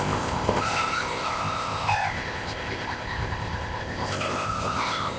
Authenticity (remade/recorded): remade